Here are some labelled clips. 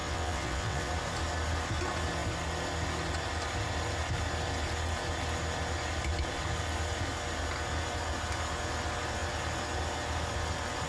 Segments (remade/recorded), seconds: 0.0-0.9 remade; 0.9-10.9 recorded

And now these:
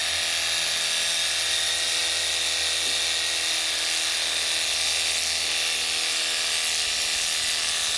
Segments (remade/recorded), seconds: 0.0-8.0 recorded

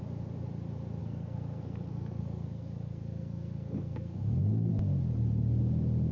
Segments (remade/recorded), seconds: 0.0-1.0 recorded; 1.0-4.7 remade; 4.7-6.1 recorded

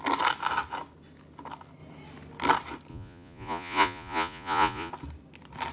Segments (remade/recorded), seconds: 0.0-2.9 recorded; 2.9-4.9 remade; 4.9-5.7 recorded

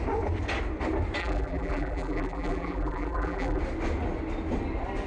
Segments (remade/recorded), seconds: 0.0-1.2 recorded; 1.2-3.6 remade; 3.6-5.1 recorded

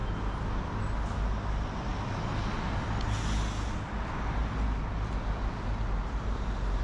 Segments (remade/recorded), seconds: 0.0-6.8 recorded